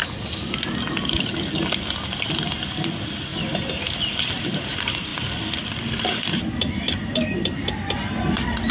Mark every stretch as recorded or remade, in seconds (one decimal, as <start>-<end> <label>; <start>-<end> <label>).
0.0-3.3 recorded; 3.3-3.8 remade; 3.8-5.1 recorded; 5.1-6.4 remade; 6.4-7.0 recorded; 7.0-8.7 remade